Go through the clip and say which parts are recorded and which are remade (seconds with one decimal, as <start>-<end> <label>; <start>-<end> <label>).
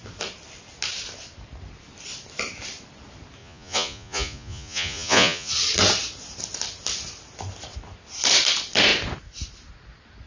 0.0-3.4 recorded; 3.4-5.5 remade; 5.5-10.3 recorded